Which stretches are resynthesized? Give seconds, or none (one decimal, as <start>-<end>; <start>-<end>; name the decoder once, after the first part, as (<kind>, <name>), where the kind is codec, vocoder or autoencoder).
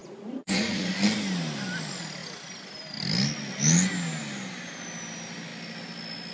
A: 0.0-0.9 (vocoder, Vocos)